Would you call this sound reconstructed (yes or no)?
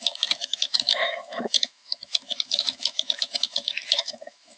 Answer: yes